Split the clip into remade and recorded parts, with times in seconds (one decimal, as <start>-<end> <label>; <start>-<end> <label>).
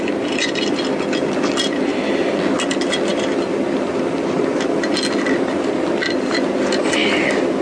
0.0-1.9 recorded; 1.9-2.4 remade; 2.4-7.0 recorded; 7.0-7.6 remade